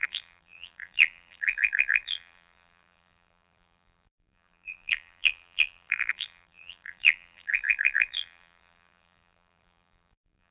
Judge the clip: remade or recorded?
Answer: remade